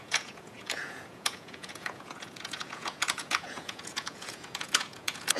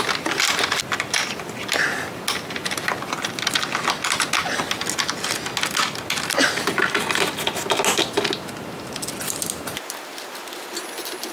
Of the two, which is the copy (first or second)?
first